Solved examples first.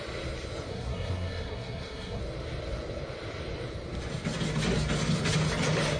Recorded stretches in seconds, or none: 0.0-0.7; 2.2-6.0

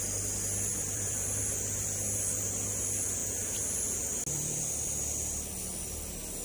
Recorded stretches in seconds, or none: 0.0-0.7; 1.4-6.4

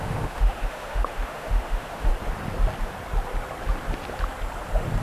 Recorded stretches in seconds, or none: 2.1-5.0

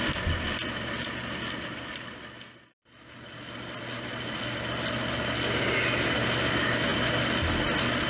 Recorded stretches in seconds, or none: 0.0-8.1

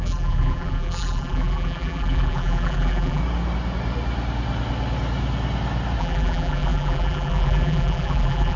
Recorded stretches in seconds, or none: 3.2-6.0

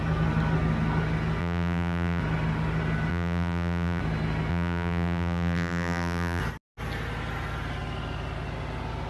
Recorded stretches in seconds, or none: 0.0-1.4; 2.2-3.1; 4.0-4.5; 6.4-9.1